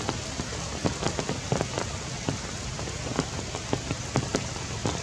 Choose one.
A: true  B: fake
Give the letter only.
A